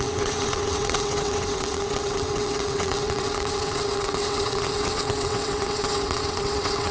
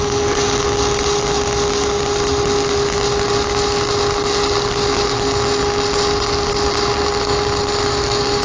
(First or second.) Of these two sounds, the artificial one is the first